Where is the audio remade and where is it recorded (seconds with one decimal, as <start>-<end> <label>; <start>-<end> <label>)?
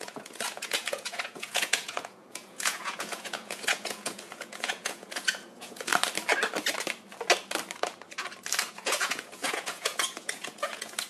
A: 0.0-5.9 remade; 5.9-8.7 recorded; 8.7-11.1 remade